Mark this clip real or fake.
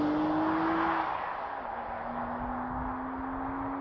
real